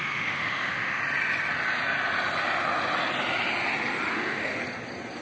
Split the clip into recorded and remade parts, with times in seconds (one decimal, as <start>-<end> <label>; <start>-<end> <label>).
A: 0.0-1.0 remade; 1.0-4.1 recorded; 4.1-4.5 remade; 4.5-5.2 recorded